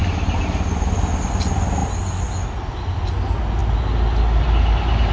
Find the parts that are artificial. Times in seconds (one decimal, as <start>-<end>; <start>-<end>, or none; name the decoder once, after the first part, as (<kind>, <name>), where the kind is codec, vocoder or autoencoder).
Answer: none